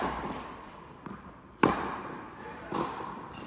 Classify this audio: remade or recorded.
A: remade